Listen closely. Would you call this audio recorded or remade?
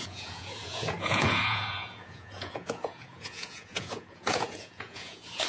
remade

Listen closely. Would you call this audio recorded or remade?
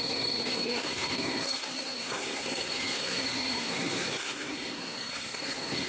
remade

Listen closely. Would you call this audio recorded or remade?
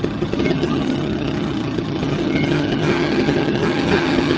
remade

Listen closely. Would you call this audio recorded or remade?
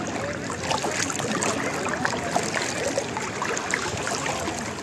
recorded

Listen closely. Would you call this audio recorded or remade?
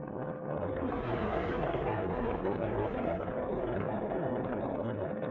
remade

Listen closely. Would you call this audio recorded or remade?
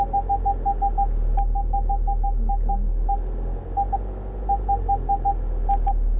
recorded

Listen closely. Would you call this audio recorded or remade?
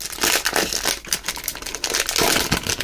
recorded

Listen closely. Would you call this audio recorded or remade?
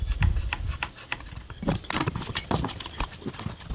recorded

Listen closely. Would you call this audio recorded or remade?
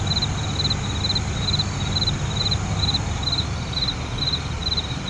recorded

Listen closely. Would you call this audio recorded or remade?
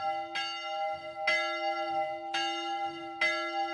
recorded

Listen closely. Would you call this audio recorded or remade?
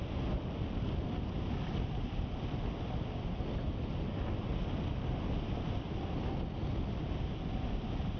recorded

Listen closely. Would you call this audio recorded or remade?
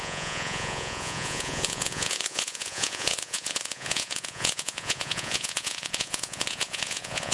remade